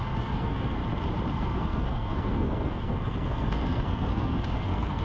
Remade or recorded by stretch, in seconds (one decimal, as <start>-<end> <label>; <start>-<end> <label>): 0.0-0.8 remade; 0.8-1.3 recorded; 1.3-5.0 remade